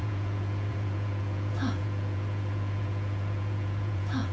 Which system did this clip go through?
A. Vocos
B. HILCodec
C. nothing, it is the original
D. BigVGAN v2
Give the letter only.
A